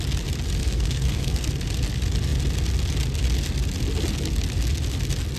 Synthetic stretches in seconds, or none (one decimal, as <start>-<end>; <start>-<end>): 0.6-1.5